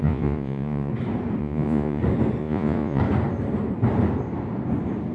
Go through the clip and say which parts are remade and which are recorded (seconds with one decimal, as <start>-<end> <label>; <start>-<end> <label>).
0.0-0.9 remade; 0.9-1.4 recorded; 1.4-2.0 remade; 2.0-2.4 recorded; 2.4-3.0 remade; 3.0-5.1 recorded